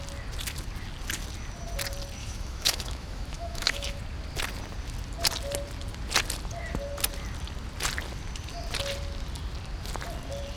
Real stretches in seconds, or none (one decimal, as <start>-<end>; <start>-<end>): 0.0-2.2; 4.0-10.6